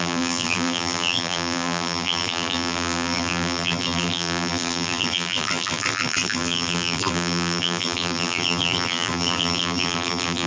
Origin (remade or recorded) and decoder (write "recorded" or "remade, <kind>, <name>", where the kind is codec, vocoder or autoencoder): remade, vocoder, BigVGAN v2